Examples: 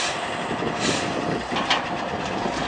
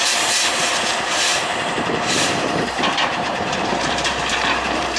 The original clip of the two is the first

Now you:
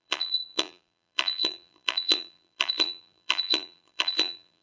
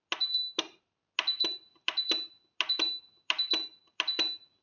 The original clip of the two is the second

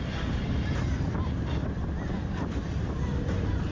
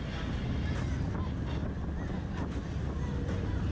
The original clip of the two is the second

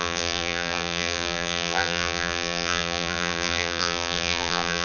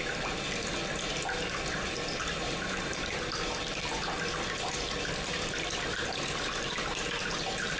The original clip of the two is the second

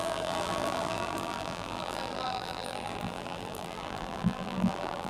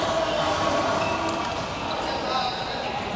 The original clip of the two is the second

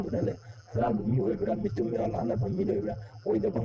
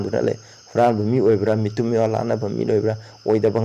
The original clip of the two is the second